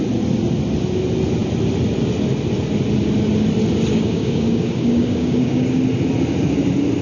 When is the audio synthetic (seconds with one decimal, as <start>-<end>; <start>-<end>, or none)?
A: 3.9-5.8